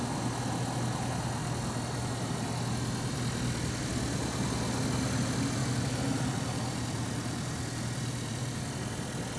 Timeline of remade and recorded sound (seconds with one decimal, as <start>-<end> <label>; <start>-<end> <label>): 0.0-5.6 recorded; 5.6-8.7 remade; 8.7-9.4 recorded